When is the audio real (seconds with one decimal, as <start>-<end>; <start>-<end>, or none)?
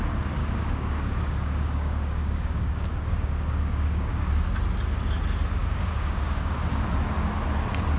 0.0-0.4; 4.3-5.6; 6.5-8.0